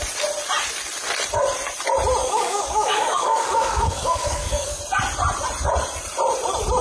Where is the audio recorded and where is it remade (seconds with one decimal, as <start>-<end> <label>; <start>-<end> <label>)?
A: 0.0-2.2 recorded; 2.2-4.8 remade; 4.8-6.8 recorded

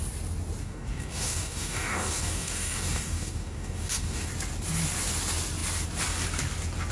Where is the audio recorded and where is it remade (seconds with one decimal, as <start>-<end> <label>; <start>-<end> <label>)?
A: 0.0-0.6 recorded; 0.6-4.3 remade; 4.3-6.9 recorded

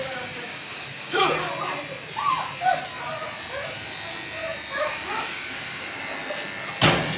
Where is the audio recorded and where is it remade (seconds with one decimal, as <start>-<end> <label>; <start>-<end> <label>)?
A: 0.0-1.2 remade; 1.2-4.8 recorded; 4.8-6.0 remade; 6.0-7.2 recorded

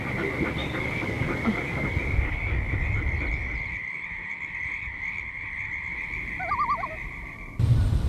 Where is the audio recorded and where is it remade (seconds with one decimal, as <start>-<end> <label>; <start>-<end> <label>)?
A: 0.0-0.6 recorded; 0.6-2.7 remade; 2.7-8.1 recorded

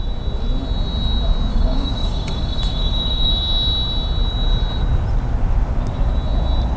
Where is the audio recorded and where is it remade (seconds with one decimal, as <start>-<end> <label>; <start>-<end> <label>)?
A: 0.0-1.5 recorded; 1.5-3.3 remade; 3.3-6.8 recorded

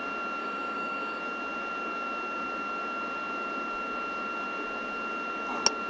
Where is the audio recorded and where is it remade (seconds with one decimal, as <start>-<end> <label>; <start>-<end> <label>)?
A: 0.0-0.4 recorded; 0.4-1.2 remade; 1.2-5.9 recorded